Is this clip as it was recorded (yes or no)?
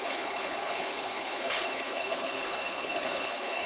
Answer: no